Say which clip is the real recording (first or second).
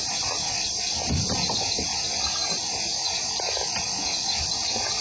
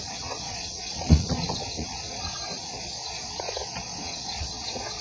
first